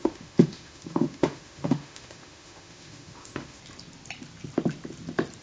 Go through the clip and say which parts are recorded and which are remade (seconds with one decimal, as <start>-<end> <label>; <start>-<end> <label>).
0.0-3.6 remade; 3.6-5.4 recorded